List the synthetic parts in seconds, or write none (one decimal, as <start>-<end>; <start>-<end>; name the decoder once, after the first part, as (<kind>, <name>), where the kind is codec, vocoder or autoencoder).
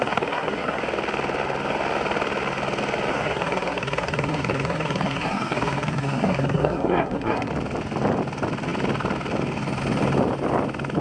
0.0-0.8 (codec, SNAC); 3.1-7.5